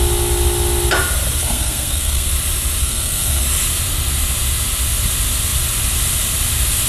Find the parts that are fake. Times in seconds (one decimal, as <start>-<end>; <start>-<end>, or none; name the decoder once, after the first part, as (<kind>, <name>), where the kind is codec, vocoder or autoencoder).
1.4-2.3 (codec, SNAC); 2.8-3.4

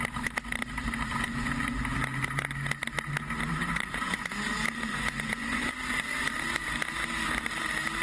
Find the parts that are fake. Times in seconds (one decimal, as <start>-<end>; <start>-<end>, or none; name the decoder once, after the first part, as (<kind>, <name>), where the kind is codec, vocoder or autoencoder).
3.5-4.3 (vocoder, Vocos); 4.9-5.7

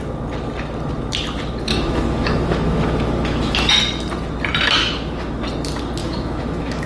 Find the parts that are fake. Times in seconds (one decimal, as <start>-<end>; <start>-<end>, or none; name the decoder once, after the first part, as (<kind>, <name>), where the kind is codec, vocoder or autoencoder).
1.7-3.7 (autoencoder, DAC-VAE); 4.8-5.4; 6.0-6.9

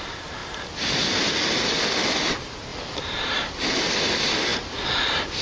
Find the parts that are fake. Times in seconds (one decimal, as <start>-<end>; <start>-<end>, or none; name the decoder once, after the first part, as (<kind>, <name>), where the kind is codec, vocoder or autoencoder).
2.7-3.9 (vocoder, BigVGAN v2); 4.5-5.4

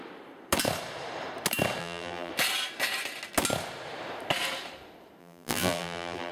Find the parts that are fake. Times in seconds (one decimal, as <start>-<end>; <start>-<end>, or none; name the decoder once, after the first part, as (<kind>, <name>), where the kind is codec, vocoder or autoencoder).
1.8-2.3 (vocoder, BigVGAN v2); 5.2-6.3